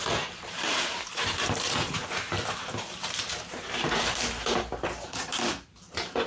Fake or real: fake